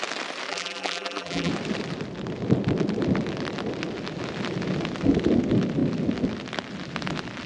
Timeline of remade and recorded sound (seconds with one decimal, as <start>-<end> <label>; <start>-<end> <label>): 0.0-0.5 recorded; 0.5-1.5 remade; 1.5-7.5 recorded